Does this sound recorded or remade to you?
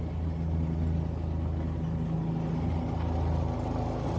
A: recorded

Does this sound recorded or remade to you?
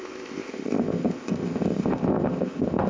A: remade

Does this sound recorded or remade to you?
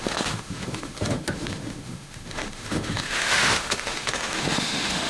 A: remade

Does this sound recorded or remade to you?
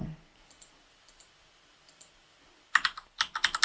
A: recorded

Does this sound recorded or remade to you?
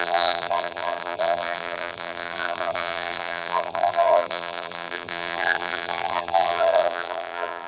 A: remade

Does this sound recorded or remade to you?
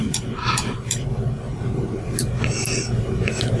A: remade